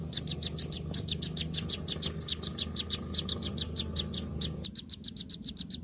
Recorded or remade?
recorded